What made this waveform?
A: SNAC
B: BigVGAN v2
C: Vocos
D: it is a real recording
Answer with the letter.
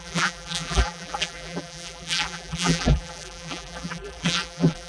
B